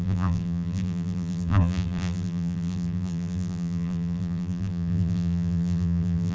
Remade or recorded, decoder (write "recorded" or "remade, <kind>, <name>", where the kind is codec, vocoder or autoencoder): remade, vocoder, BigVGAN v2